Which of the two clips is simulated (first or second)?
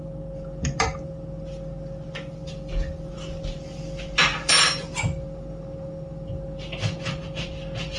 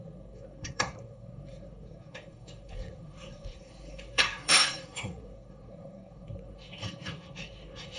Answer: second